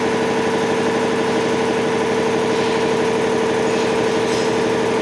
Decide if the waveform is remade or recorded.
recorded